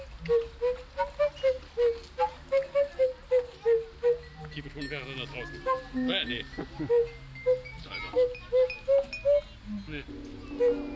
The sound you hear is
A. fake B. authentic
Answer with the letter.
B